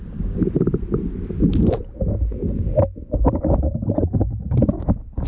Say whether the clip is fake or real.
real